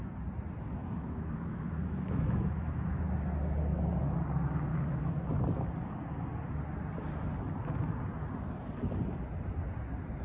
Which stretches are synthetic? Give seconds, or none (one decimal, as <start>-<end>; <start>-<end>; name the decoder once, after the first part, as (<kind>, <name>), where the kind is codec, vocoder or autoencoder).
0.8-3.0 (autoencoder, DAC-VAE); 4.7-5.2